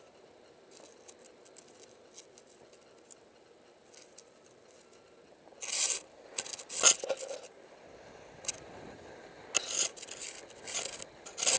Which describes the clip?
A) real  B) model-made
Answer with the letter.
A